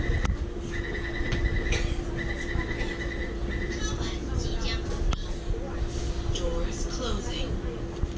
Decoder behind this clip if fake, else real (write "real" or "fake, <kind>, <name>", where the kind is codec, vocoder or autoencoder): real